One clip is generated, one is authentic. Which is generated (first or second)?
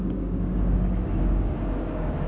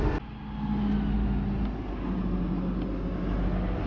first